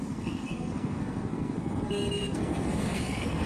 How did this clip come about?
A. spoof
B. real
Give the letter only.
A